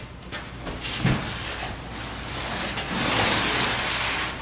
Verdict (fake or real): real